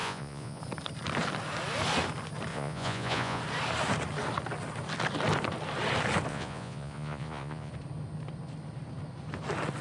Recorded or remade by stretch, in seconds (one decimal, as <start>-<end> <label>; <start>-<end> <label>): 0.0-0.6 remade; 0.6-2.5 recorded; 2.5-3.4 remade; 3.4-6.3 recorded; 6.3-7.7 remade; 7.7-9.8 recorded